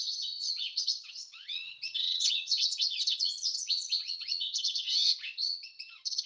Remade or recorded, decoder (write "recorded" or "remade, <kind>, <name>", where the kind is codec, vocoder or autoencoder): remade, vocoder, WaveNeXt